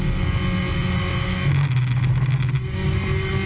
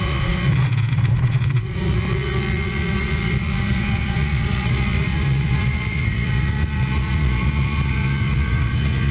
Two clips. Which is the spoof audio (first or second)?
second